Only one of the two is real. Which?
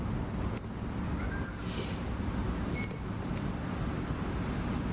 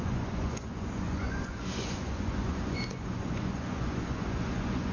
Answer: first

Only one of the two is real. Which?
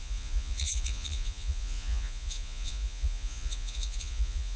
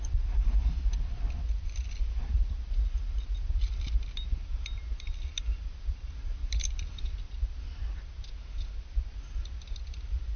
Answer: second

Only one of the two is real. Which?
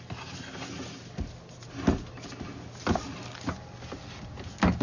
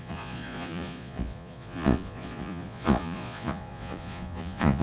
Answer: first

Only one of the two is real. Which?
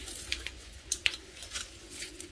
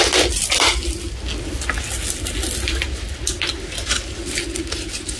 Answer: second